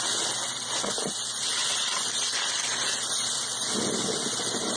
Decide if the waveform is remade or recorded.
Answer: recorded